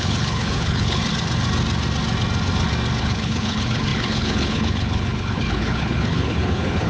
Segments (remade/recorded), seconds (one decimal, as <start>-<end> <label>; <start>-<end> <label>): 0.0-1.0 remade; 1.0-3.0 recorded; 3.0-6.9 remade